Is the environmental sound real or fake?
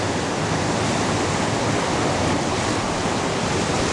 real